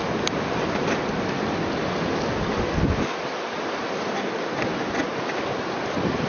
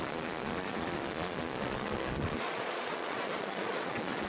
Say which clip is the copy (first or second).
second